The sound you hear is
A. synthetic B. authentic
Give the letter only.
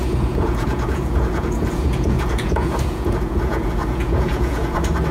A